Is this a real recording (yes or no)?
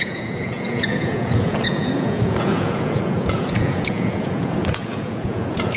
no